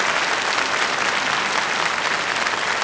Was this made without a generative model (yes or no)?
yes